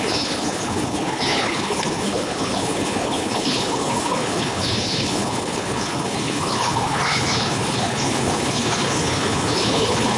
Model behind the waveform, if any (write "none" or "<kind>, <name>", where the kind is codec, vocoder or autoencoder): codec, HILCodec